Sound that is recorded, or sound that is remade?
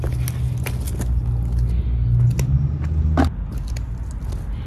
recorded